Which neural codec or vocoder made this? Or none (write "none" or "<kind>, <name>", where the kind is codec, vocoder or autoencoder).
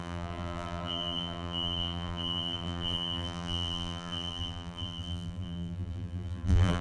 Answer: vocoder, BigVGAN v2